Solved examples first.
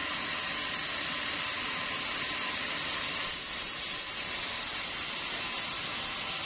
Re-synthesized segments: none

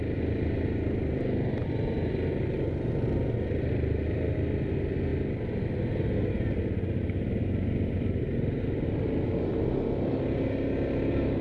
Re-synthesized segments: none

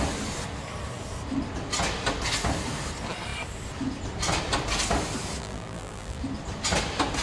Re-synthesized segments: 5.4-6.2 (vocoder, BigVGAN v2)

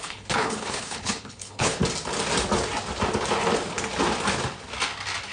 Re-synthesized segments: 0.0-1.8 (codec, HILCodec)